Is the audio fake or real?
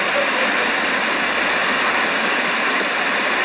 fake